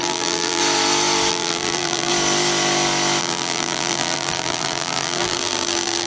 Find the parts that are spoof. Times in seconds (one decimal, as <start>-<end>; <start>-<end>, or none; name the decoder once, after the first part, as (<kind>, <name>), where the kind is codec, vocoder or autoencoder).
0.0-0.6 (vocoder, BigVGAN v2); 1.3-2.1; 3.2-6.1